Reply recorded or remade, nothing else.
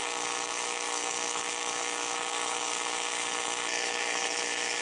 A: remade